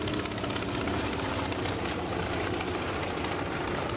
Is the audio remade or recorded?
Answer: remade